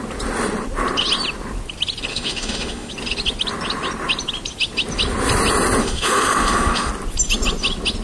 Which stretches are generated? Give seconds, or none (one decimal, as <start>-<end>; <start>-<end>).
2.1-2.9; 5.8-6.9